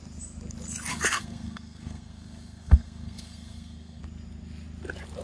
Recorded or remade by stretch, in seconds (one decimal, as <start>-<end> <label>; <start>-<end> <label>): 0.0-0.9 recorded; 0.9-4.0 remade; 4.0-5.2 recorded